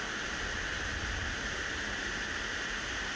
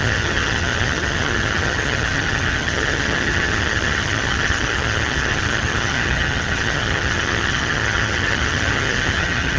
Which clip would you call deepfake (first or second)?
second